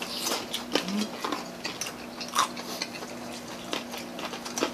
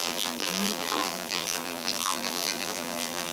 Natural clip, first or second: first